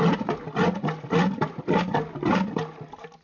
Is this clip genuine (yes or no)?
yes